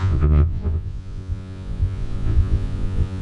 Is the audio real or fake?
fake